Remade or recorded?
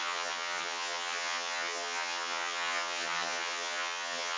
remade